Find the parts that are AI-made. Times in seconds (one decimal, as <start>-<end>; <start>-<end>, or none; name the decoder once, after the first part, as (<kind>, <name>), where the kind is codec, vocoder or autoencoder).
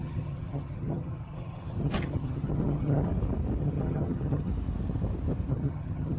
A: 0.0-3.1 (vocoder, HiFi-GAN); 3.6-4.5; 5.5-6.2